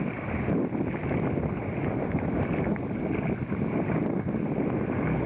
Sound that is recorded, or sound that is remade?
recorded